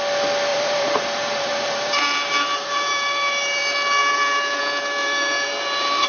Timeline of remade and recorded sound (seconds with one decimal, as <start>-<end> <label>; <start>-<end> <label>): 0.0-0.5 recorded; 0.5-3.6 remade; 3.6-4.0 recorded; 4.0-4.6 remade; 4.6-5.0 recorded; 5.0-6.1 remade